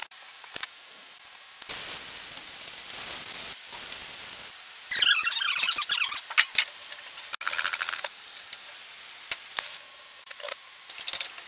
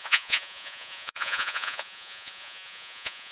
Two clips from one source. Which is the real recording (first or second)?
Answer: first